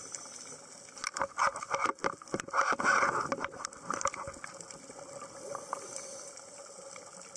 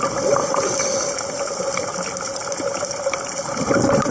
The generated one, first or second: second